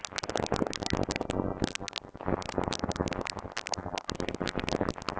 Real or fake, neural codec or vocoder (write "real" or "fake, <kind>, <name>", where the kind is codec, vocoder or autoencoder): real